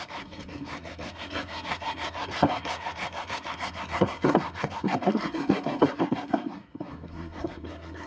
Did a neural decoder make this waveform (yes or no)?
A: yes